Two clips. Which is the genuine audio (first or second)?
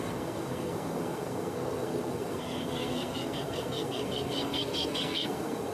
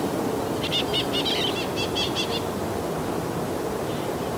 second